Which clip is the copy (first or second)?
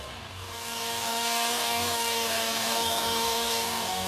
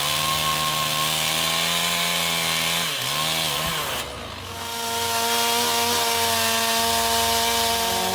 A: first